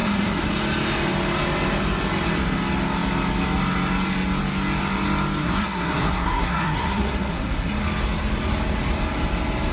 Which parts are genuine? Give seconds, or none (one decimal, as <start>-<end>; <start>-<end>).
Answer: 0.5-5.4; 7.7-9.7